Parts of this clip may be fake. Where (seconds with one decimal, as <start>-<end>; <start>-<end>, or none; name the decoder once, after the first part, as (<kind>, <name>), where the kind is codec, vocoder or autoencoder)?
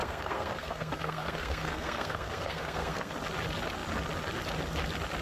0.0-3.1 (codec, SNAC)